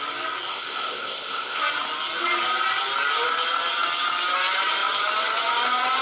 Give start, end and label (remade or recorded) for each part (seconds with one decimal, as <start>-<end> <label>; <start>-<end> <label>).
0.0-0.5 recorded; 0.5-1.6 remade; 1.6-6.0 recorded

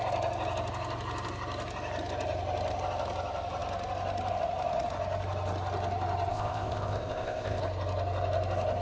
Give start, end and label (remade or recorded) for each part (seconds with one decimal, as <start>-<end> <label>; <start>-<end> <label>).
0.0-6.3 recorded; 6.3-7.6 remade; 7.6-8.8 recorded